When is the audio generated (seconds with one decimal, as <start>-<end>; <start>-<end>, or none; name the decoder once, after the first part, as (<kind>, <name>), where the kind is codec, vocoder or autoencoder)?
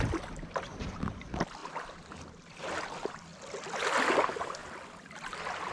0.0-3.3 (vocoder, BigVGAN v2); 4.0-4.6